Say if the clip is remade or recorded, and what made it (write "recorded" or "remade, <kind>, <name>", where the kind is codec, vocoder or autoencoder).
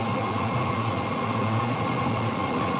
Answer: remade, vocoder, Vocos